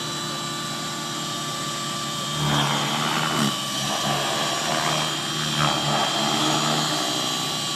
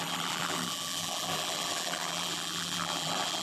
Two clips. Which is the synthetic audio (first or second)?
second